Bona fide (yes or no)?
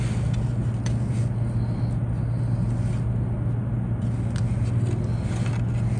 yes